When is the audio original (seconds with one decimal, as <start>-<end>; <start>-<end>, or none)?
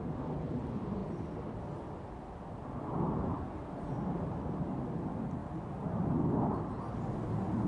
5.4-7.7